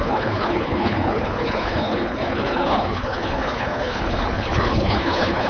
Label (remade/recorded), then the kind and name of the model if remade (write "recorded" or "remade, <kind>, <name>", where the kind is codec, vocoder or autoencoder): remade, codec, HILCodec